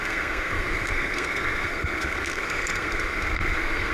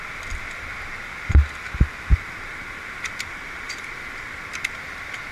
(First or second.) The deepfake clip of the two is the first